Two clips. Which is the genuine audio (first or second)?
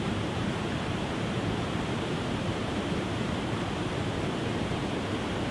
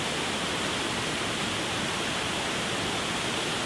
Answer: second